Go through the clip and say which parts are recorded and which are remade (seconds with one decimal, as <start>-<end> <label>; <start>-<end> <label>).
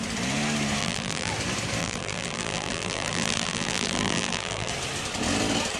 0.0-0.8 recorded; 0.8-1.3 remade; 1.3-1.8 recorded; 1.8-4.7 remade; 4.7-5.8 recorded